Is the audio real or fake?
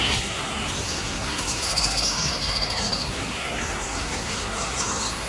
fake